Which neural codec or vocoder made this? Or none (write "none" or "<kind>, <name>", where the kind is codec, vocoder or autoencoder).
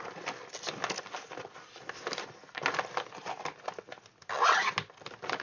none